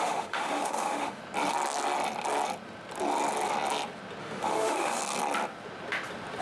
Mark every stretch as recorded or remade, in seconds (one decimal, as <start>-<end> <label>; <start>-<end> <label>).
0.0-1.2 remade; 1.2-4.2 recorded; 4.2-5.0 remade; 5.0-6.4 recorded